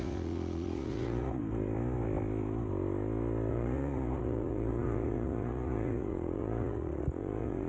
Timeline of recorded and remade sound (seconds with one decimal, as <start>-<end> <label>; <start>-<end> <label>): 0.0-1.4 remade; 1.4-3.5 recorded; 3.5-7.7 remade